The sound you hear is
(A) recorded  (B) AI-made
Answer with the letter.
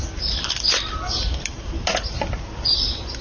A